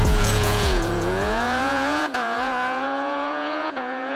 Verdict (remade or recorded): remade